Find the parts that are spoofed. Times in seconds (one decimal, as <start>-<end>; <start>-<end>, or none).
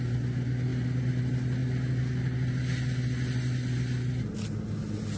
none